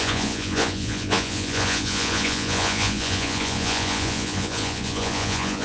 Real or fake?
fake